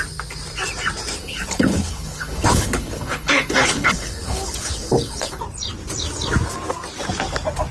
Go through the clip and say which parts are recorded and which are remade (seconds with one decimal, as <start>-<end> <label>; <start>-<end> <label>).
0.0-1.2 recorded; 1.2-5.4 remade; 5.4-7.7 recorded